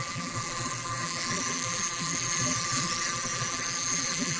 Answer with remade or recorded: remade